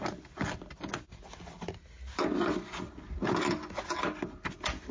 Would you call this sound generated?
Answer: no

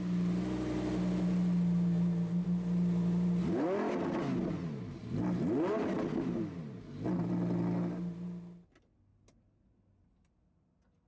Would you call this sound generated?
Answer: no